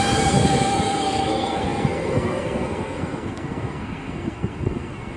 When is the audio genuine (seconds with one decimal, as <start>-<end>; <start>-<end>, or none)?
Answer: none